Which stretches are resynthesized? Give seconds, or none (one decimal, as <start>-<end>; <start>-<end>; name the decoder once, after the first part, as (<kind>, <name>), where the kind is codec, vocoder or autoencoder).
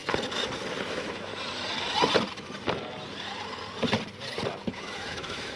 0.9-1.3 (autoencoder, DAC-VAE); 4.7-5.6